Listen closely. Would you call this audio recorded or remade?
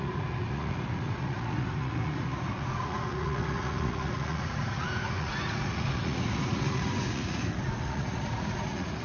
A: remade